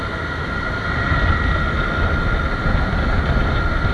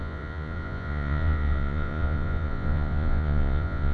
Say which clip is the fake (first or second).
second